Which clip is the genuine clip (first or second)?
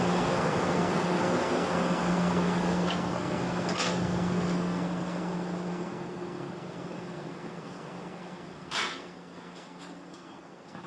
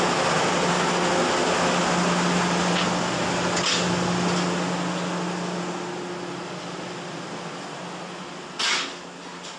second